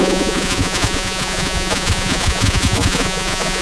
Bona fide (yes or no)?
no